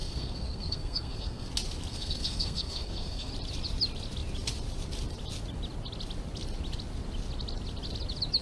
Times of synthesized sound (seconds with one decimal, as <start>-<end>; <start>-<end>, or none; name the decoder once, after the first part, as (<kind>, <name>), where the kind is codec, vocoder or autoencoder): 0.0-1.5 (codec, SNAC); 1.9-3.3